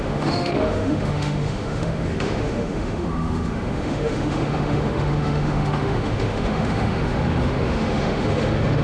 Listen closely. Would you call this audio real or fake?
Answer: fake